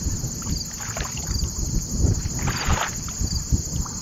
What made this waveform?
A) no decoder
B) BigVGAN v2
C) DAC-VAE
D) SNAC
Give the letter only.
A